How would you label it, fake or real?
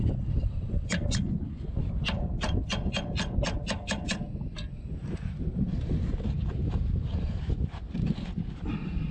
real